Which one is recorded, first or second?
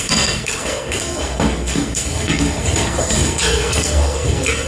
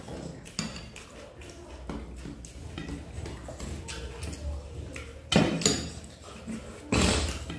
second